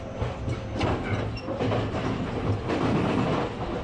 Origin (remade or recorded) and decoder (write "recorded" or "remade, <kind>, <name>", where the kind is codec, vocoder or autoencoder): recorded